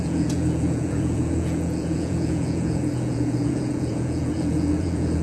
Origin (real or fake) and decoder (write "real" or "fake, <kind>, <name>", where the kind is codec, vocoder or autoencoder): fake, vocoder, Vocos